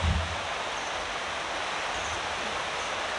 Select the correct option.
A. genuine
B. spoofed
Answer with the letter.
A